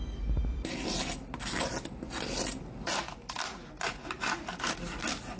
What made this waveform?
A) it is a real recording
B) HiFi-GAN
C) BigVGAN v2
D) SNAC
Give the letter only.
A